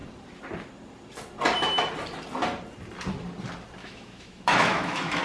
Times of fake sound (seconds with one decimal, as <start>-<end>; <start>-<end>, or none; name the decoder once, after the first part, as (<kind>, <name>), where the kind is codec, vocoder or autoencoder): 3.8-5.2 (autoencoder, DAC-VAE)

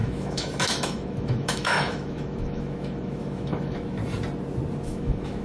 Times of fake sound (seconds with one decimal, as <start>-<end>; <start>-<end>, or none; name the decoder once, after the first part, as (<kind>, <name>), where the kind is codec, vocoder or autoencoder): 0.0-4.0 (autoencoder, DAC-VAE); 4.8-5.4

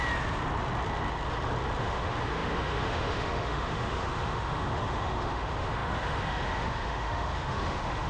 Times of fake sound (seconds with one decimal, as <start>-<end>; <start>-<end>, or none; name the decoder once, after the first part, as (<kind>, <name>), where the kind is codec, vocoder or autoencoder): 1.8-8.1 (autoencoder, DAC-VAE)

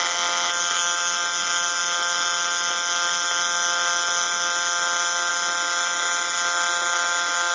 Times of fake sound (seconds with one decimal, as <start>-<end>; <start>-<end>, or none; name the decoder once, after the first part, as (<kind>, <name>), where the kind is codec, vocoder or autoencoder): 0.0-7.5 (autoencoder, DAC-VAE)

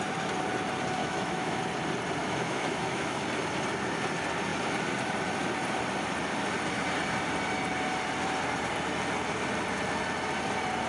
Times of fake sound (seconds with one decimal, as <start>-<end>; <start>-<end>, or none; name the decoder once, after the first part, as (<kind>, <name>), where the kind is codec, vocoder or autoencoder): 1.0-1.6 (autoencoder, DAC-VAE); 2.2-3.2

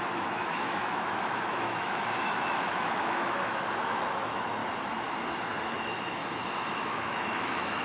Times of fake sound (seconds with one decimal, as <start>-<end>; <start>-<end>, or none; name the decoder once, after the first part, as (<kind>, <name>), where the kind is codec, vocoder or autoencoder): 0.0-4.6 (autoencoder, DAC-VAE); 5.6-6.2; 6.7-7.8

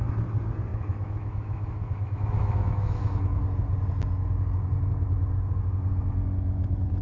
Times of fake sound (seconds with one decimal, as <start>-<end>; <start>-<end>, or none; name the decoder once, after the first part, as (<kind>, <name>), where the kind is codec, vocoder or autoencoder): 0.7-3.4 (autoencoder, DAC-VAE)